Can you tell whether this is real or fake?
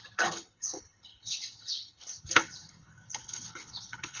fake